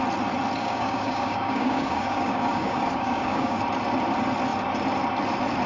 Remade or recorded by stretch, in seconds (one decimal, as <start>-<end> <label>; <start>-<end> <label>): 0.0-0.6 recorded; 0.6-3.6 remade; 3.6-5.7 recorded